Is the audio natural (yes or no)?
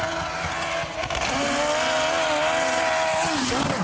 yes